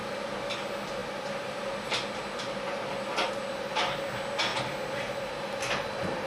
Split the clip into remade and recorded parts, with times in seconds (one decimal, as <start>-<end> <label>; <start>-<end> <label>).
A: 0.0-6.3 recorded